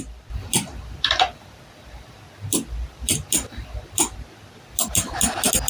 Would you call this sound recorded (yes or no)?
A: yes